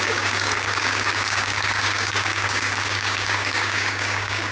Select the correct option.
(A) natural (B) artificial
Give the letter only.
B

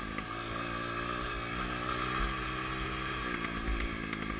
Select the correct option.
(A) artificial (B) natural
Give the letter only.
B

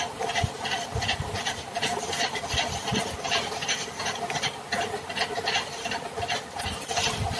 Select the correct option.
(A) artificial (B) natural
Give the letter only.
B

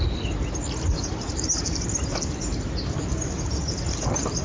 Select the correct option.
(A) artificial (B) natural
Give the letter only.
B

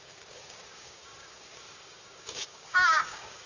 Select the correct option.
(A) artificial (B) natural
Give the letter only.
A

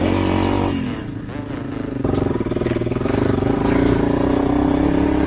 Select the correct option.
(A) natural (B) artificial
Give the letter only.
A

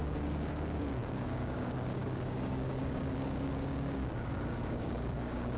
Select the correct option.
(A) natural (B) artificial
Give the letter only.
B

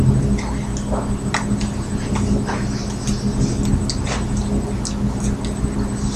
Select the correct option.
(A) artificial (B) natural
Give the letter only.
B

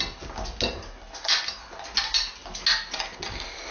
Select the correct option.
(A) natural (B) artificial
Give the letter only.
A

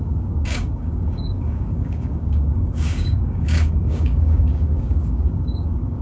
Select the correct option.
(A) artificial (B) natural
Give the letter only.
A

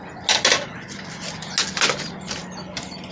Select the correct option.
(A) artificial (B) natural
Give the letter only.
B